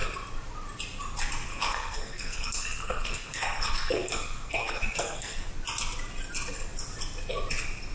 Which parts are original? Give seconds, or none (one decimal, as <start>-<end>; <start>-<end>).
0.0-1.5; 5.5-7.9